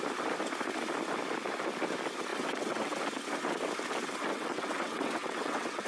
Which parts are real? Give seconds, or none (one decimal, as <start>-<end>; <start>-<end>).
0.0-2.3; 3.0-4.3